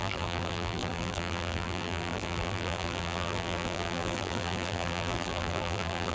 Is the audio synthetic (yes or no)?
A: yes